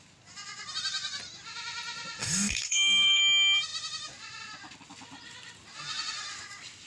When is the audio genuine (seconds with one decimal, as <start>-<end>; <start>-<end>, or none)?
0.0-2.2; 3.2-6.9